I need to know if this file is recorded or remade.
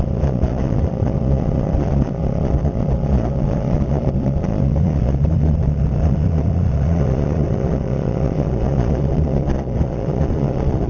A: remade